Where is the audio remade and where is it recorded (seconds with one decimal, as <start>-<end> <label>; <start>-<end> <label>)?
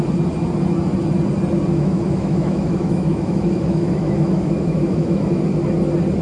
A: 0.0-1.7 recorded; 1.7-5.4 remade; 5.4-6.2 recorded